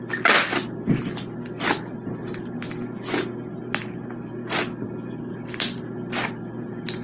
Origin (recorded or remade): recorded